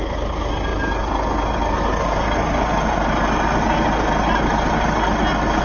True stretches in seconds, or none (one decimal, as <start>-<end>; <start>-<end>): 0.0-5.6